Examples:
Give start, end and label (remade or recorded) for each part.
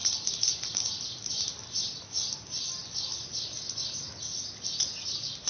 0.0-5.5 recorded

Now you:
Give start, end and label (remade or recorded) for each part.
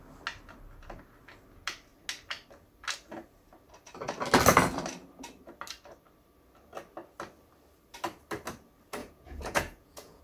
0.0-9.0 recorded; 9.0-10.2 remade